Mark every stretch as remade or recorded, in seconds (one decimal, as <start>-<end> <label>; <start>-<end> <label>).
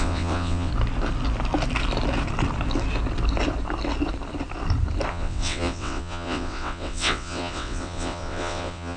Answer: 0.0-0.7 remade; 0.7-5.1 recorded; 5.1-9.0 remade